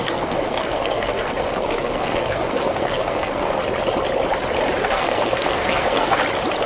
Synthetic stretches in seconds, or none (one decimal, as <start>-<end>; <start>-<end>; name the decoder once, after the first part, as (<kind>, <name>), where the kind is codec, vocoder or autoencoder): 0.0-3.6 (codec, SNAC); 4.8-6.2

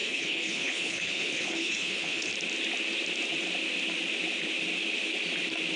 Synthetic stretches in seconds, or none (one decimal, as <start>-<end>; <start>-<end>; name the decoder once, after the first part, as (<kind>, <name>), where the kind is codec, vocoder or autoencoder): 0.0-2.3 (codec, HILCodec)

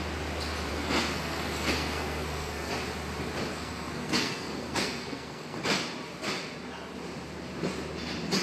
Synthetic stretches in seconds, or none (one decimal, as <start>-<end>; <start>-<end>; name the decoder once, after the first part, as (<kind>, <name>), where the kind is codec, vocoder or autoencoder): 0.7-2.7 (codec, SNAC); 3.5-5.8